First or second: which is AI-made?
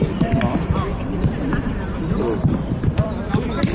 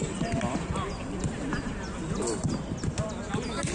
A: first